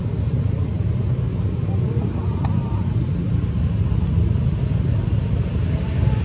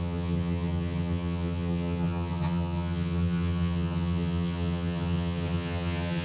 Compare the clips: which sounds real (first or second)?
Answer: first